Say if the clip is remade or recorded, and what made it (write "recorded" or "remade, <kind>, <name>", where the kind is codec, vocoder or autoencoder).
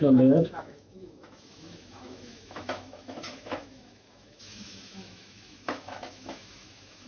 remade, autoencoder, DAC-VAE